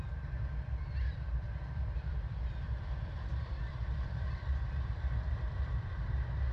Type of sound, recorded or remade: remade